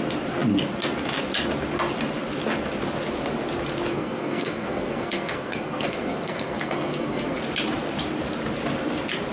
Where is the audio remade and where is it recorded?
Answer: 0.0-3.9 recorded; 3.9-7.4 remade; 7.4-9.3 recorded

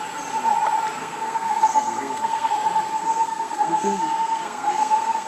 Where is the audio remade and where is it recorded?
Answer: 0.0-1.0 recorded; 1.0-2.5 remade; 2.5-2.9 recorded; 2.9-5.3 remade

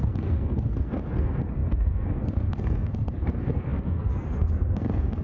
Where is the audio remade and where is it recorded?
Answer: 0.0-5.2 remade